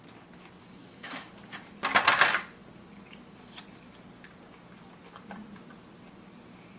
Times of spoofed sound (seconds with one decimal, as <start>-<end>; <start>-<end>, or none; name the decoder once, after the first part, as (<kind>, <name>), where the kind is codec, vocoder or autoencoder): 0.6-1.3 (autoencoder, DAC-VAE)